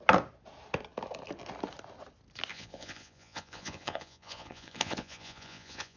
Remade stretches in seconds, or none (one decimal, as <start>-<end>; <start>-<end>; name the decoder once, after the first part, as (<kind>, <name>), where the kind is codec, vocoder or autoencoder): 2.5-6.0 (vocoder, Vocos)